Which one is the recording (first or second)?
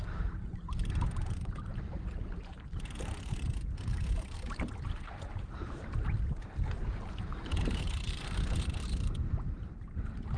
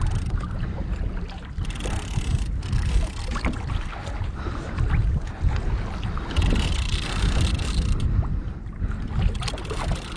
second